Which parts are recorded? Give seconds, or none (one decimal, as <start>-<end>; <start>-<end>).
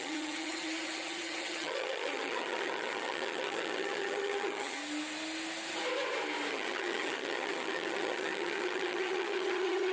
4.8-6.5